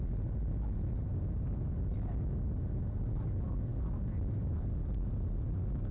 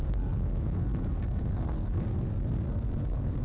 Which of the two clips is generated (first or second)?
second